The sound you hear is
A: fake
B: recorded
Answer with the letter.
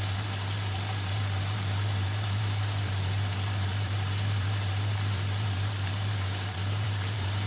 A